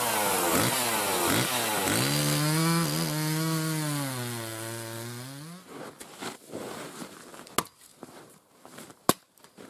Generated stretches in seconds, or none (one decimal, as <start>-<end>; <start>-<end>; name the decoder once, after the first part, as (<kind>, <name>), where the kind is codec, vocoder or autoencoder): 7.9-9.7 (vocoder, BigVGAN v2)